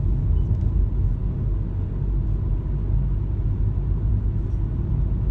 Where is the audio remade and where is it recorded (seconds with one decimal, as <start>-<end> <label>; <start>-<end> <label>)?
0.0-5.3 recorded